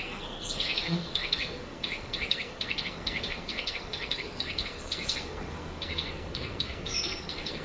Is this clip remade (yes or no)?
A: yes